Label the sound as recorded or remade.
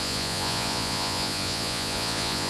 remade